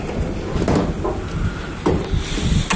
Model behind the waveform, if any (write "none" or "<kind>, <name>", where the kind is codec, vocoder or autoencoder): none